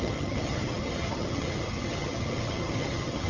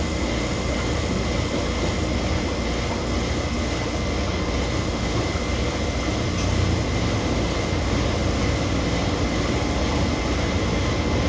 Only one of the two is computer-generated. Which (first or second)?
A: first